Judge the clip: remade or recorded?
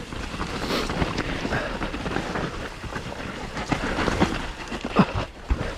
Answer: remade